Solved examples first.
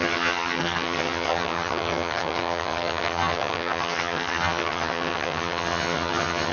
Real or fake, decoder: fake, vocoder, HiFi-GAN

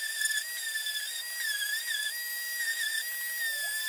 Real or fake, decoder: real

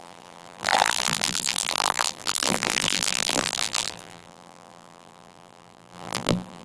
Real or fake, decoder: fake, vocoder, BigVGAN v2